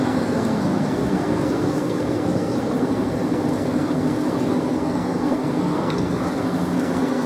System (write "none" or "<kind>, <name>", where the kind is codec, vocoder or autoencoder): codec, SNAC